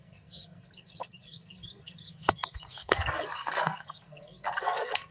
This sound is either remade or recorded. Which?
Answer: remade